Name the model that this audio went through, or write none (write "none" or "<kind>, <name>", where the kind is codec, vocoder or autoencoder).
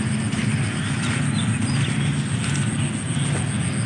none